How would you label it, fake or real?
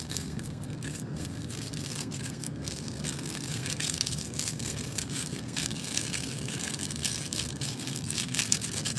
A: fake